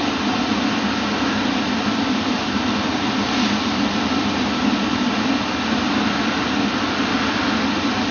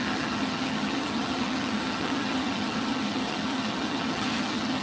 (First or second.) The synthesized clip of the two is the second